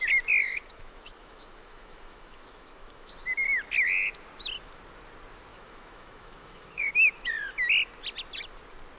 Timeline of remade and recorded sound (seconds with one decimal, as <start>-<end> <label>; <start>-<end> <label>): 0.0-0.4 recorded; 0.4-3.1 remade; 3.1-5.5 recorded; 5.5-7.3 remade; 7.3-9.0 recorded